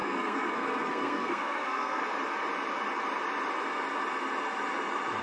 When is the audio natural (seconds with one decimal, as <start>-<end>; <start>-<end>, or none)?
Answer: 2.0-5.2